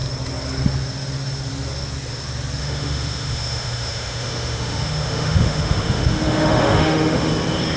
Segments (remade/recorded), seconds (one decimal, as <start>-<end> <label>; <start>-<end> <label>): 0.0-2.6 recorded; 2.6-7.3 remade; 7.3-7.8 recorded